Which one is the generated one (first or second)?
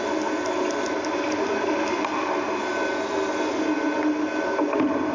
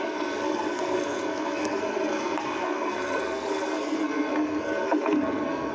second